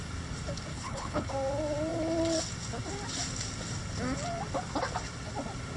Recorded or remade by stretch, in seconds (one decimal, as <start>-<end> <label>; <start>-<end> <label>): 0.0-0.7 recorded; 0.7-1.3 remade; 1.3-5.8 recorded